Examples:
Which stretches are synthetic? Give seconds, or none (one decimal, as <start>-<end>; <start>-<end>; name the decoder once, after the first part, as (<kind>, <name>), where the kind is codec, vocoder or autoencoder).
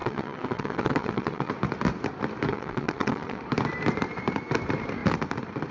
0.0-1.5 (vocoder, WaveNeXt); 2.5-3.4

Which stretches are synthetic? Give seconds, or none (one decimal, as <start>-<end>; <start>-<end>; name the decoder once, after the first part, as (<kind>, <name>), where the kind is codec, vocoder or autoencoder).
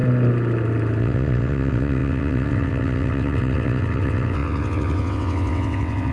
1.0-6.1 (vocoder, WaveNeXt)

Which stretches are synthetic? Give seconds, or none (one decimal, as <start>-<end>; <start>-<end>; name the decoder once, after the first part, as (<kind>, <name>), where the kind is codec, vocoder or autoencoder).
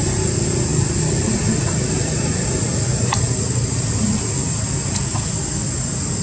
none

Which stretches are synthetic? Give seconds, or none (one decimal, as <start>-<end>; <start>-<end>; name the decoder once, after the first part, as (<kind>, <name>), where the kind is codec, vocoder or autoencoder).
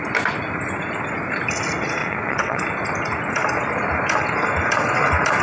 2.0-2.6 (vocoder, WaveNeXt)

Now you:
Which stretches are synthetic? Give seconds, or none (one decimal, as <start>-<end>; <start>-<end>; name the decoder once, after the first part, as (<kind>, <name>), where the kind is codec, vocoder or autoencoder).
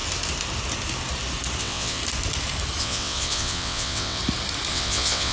1.6-2.0 (vocoder, WaveNeXt); 2.8-4.2; 4.7-5.3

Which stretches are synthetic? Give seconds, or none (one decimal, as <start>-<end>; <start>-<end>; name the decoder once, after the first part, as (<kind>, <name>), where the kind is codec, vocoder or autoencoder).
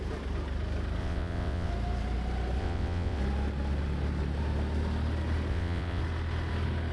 1.0-1.7 (vocoder, WaveNeXt); 2.6-3.2; 5.5-6.0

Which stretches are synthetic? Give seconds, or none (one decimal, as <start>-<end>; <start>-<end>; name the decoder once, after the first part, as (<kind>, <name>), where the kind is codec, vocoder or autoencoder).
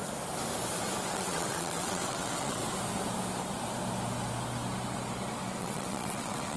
1.1-2.6 (vocoder, WaveNeXt); 5.6-6.6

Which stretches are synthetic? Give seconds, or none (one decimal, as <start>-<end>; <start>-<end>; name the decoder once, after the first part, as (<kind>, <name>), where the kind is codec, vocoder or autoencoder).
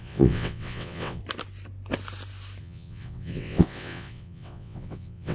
0.0-1.2 (vocoder, WaveNeXt); 2.6-5.3